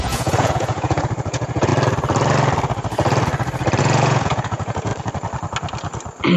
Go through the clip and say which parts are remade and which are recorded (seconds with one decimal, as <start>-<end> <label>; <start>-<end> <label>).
0.0-1.7 remade; 1.7-3.8 recorded; 3.8-4.9 remade; 4.9-6.4 recorded